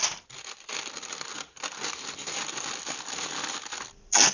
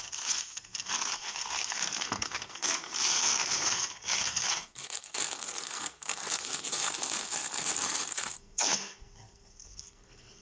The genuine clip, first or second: first